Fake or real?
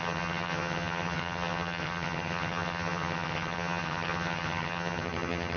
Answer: fake